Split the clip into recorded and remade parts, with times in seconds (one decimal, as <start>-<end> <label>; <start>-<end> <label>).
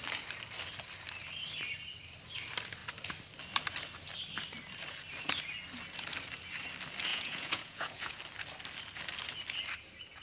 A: 0.0-7.1 recorded; 7.1-8.2 remade; 8.2-10.2 recorded